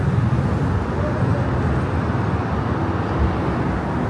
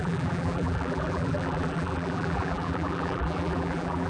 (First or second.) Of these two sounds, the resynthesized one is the second